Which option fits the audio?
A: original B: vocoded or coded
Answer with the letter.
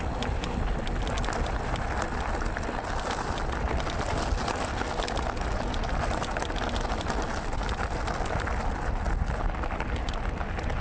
A